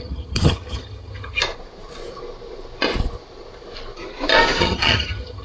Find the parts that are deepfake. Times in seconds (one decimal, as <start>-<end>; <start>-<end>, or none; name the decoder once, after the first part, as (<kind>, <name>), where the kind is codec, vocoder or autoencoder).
0.0-1.4 (vocoder, HiFi-GAN); 4.6-5.4